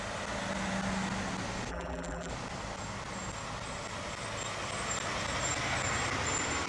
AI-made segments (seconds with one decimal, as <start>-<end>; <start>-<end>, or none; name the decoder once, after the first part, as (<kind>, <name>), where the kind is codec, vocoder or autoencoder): 1.7-2.3 (vocoder, BigVGAN v2)